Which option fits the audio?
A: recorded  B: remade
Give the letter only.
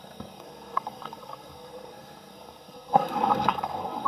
B